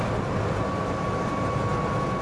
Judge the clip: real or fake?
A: real